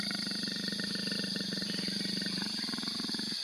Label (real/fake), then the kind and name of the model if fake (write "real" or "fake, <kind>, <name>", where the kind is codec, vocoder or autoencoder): real